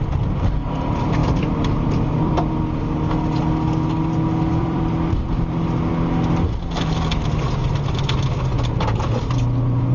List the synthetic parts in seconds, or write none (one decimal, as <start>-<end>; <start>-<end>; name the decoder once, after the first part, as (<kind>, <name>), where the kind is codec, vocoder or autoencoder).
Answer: 1.2-2.3 (vocoder, BigVGAN v2); 4.5-5.9